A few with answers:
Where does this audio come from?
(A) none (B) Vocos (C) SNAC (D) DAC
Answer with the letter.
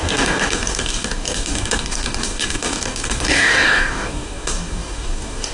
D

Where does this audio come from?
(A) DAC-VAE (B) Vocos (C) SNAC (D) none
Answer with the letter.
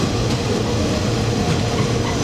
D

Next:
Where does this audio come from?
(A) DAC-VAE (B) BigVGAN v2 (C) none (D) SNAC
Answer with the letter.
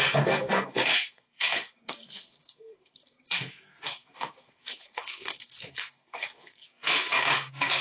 D